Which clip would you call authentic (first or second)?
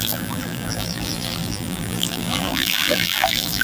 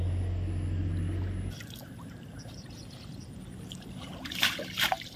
second